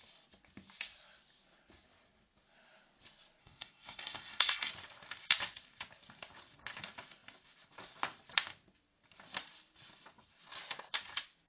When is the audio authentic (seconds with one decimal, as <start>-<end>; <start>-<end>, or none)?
0.0-3.4; 4.7-11.5